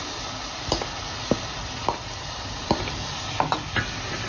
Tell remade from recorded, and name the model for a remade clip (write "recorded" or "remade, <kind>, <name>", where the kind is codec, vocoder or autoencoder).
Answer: recorded